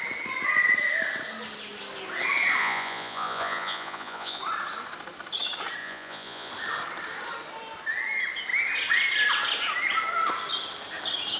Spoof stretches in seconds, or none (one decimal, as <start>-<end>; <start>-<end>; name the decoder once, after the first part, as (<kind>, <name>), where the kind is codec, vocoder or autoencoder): 2.6-4.4 (vocoder, Vocos); 5.8-6.5